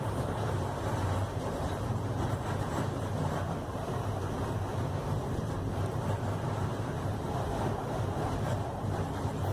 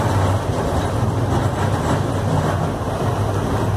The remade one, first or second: first